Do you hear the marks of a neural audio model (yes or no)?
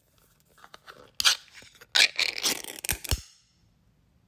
no